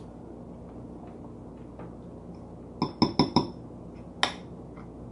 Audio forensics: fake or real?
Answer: real